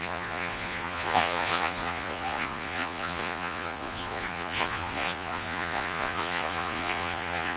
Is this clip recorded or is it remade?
remade